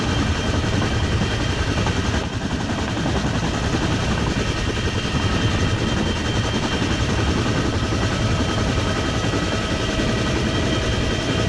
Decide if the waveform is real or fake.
fake